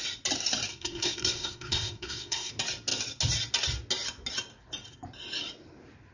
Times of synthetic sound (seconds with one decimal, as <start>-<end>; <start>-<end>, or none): 0.7-2.5